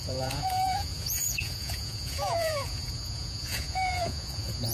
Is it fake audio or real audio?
fake